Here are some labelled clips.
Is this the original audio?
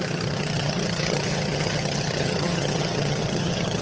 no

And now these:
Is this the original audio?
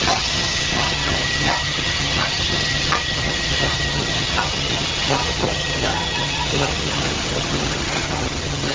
no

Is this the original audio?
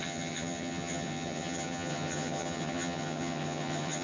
no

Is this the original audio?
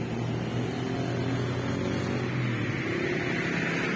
yes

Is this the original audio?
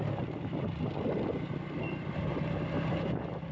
yes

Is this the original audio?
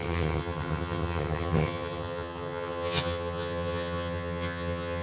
no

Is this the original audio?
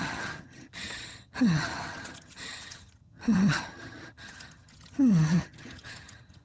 no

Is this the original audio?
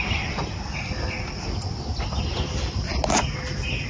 yes